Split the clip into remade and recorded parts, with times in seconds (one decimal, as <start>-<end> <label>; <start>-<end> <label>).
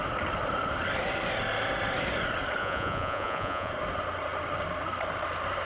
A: 0.0-2.6 recorded; 2.6-3.7 remade; 3.7-5.6 recorded